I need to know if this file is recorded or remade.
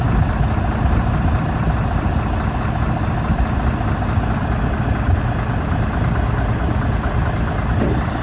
recorded